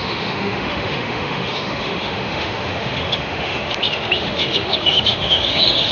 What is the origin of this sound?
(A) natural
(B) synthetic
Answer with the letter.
B